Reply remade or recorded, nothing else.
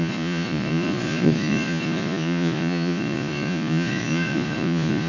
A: remade